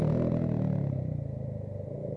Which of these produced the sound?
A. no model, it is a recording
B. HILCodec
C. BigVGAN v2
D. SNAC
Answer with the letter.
A